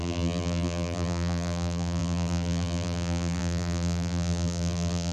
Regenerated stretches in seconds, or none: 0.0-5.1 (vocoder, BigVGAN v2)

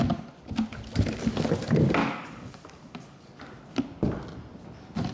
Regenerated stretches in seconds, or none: 2.0-3.3 (codec, DAC)

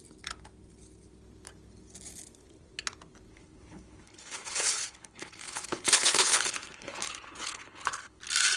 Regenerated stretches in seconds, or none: 3.3-8.2 (codec, HILCodec)

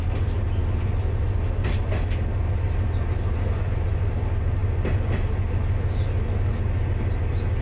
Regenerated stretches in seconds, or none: none